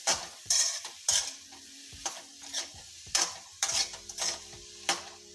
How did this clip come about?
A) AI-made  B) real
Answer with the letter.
A